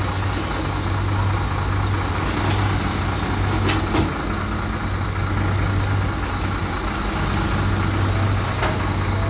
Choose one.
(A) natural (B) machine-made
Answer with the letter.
A